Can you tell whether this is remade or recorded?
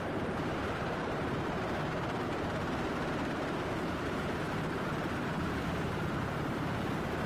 remade